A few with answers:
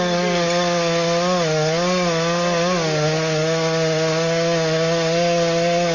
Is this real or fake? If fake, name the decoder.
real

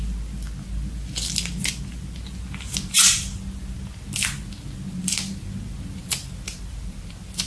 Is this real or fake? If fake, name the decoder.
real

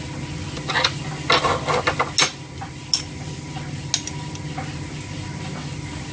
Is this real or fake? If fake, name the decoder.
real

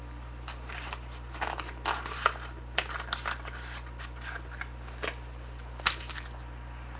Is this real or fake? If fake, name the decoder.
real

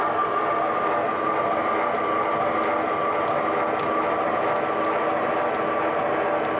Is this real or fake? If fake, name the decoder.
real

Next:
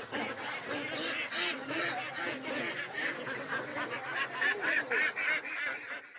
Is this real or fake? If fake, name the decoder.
real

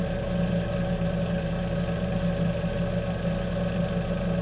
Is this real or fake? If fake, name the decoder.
real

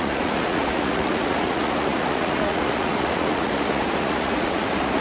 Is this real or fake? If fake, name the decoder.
fake, vocoder, Vocos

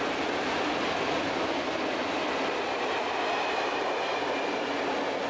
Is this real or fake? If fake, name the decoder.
real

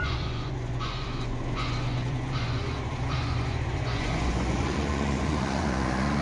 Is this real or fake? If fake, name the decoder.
fake, vocoder, Vocos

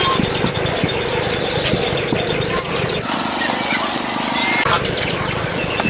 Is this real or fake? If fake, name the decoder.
real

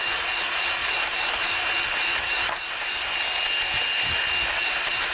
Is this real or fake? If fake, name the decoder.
real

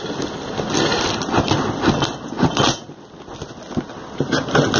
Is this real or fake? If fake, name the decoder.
real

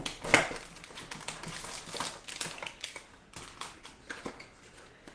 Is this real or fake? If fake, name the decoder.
real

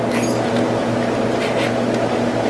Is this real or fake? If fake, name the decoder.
real